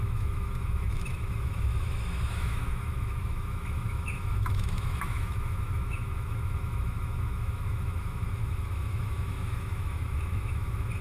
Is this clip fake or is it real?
fake